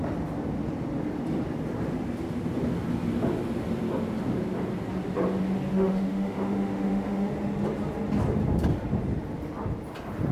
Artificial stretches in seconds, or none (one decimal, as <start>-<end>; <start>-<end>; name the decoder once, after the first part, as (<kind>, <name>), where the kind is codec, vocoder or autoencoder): 5.7-7.3 (autoencoder, DAC-VAE)